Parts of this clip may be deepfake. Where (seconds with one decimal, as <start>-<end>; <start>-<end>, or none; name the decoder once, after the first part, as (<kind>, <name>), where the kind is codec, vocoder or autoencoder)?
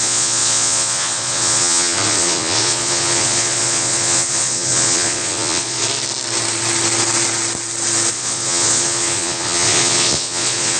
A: 0.0-5.8 (vocoder, Vocos); 8.1-10.8